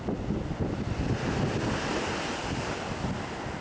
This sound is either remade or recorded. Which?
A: recorded